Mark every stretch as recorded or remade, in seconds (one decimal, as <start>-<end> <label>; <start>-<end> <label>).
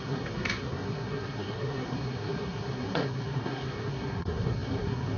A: 0.0-5.2 remade